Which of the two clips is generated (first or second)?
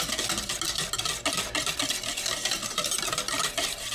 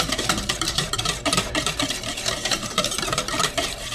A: second